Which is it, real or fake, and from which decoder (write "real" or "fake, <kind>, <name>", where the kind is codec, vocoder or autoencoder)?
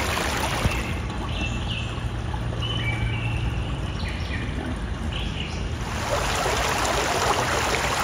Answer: real